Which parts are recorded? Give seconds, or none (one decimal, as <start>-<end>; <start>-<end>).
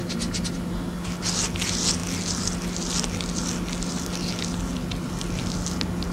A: 0.0-6.1